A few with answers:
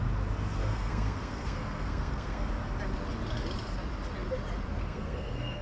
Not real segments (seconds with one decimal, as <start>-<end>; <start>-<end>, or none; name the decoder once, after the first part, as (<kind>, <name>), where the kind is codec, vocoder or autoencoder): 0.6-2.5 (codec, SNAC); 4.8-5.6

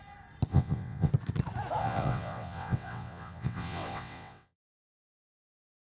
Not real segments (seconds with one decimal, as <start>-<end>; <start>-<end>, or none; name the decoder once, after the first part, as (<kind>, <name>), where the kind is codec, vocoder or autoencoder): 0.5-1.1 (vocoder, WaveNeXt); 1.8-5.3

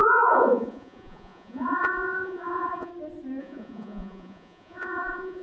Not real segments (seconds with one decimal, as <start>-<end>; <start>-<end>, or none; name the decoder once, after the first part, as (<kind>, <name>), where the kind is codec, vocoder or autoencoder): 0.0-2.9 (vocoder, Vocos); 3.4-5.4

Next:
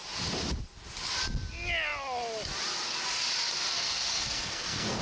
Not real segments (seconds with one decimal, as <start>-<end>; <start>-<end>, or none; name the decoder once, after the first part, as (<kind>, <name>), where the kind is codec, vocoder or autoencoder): 3.7-5.0 (codec, SNAC)

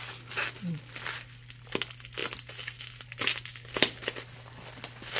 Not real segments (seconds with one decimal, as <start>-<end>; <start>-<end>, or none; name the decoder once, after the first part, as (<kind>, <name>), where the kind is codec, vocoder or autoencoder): none